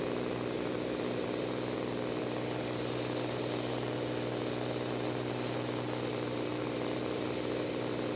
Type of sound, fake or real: real